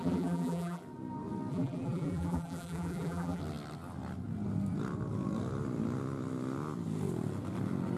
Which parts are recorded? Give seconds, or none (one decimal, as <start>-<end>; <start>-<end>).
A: 0.8-1.5; 3.4-8.0